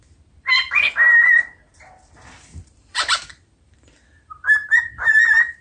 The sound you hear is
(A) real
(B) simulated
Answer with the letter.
B